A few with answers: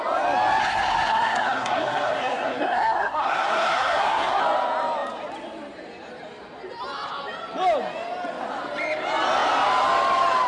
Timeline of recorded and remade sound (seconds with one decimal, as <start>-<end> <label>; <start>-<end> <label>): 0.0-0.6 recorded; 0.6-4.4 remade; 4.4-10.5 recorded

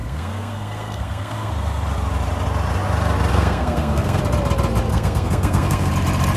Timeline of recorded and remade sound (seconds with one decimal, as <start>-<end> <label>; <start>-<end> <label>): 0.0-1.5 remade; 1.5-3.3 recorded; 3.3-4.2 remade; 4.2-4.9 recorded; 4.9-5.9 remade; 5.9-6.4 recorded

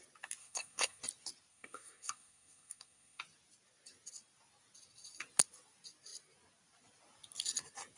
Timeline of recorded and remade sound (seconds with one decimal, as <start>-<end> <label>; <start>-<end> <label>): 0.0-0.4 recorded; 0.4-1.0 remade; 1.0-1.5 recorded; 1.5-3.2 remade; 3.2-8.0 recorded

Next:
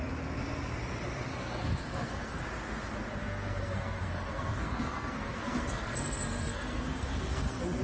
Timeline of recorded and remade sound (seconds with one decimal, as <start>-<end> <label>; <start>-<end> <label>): 0.0-1.3 recorded; 1.3-2.4 remade; 2.4-3.2 recorded; 3.2-7.8 remade

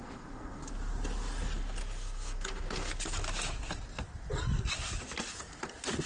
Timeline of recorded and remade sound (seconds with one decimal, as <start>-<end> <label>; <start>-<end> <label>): 0.0-0.7 remade; 0.7-1.8 recorded; 1.8-2.9 remade; 2.9-6.1 recorded

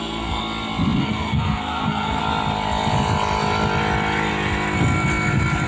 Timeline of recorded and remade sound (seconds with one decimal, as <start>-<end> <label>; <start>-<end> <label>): 0.0-0.4 remade; 0.4-1.0 recorded; 1.0-2.2 remade; 2.2-5.7 recorded

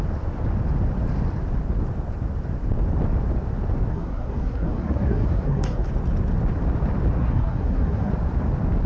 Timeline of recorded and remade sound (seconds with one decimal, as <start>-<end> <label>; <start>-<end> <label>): 0.0-3.9 recorded; 3.9-5.9 remade; 5.9-7.2 recorded; 7.2-8.1 remade; 8.1-8.9 recorded